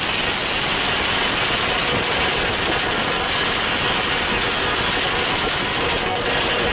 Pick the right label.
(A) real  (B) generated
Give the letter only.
A